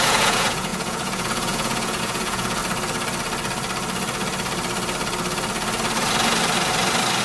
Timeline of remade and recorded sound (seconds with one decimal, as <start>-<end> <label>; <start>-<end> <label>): 0.0-2.6 remade; 2.6-7.2 recorded